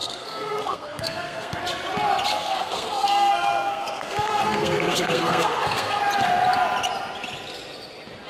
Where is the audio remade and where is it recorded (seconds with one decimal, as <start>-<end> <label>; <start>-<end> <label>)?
0.0-1.6 remade; 1.6-2.3 recorded; 2.3-6.0 remade; 6.0-8.3 recorded